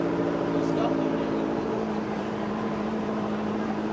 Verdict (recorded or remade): remade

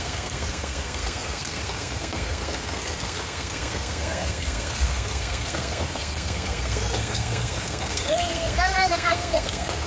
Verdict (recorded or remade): remade